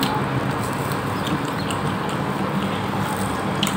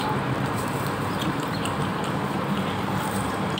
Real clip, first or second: first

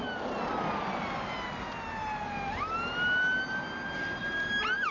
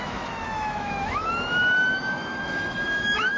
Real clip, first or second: first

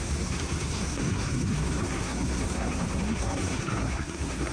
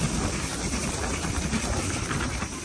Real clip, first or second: second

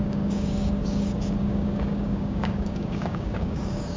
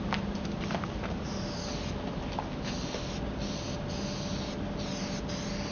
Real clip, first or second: second